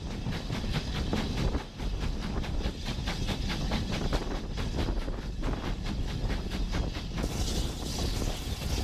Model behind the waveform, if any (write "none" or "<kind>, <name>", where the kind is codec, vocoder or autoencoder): none